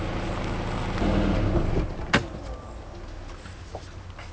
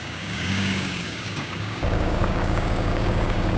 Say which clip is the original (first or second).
first